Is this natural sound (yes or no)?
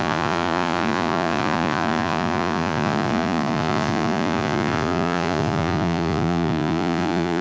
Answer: no